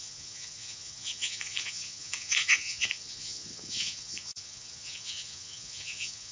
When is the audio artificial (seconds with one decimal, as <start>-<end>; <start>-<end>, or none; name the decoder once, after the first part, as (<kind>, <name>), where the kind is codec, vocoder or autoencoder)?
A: 0.0-6.3 (vocoder, Vocos)